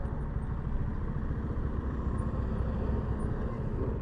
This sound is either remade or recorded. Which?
recorded